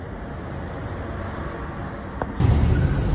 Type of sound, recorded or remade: recorded